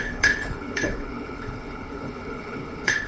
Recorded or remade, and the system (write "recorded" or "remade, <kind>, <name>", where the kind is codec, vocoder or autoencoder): remade, codec, HILCodec